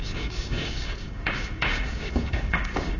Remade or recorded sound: remade